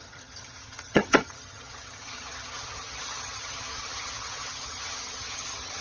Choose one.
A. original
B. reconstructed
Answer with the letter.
B